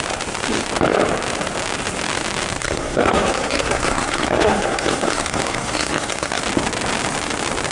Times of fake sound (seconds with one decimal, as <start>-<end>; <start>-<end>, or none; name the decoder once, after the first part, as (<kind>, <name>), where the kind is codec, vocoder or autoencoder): 2.6-6.4 (codec, SNAC)